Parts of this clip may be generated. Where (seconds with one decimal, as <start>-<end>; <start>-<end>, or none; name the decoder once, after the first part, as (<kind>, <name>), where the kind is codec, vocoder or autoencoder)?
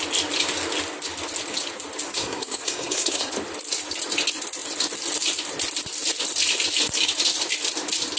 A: 2.1-3.3 (codec, SNAC)